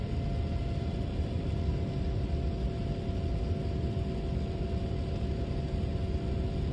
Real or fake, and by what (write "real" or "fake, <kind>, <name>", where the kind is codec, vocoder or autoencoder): real